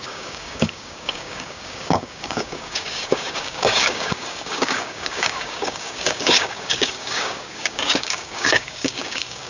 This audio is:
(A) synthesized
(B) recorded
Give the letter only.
A